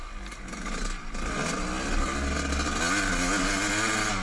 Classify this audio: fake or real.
real